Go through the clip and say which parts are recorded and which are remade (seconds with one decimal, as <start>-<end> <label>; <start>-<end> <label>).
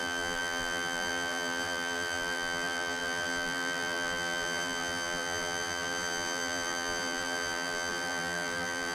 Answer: 0.0-8.9 remade